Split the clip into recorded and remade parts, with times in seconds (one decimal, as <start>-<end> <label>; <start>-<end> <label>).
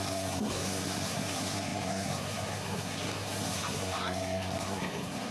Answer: 0.0-5.3 remade